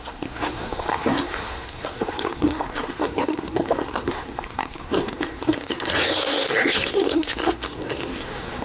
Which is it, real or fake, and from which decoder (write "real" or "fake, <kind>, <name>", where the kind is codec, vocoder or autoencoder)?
fake, codec, SNAC